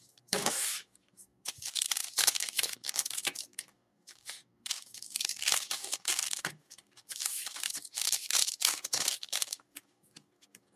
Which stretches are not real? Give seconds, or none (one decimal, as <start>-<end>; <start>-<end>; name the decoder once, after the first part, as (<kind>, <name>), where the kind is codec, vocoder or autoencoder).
0.0-10.8 (codec, DAC)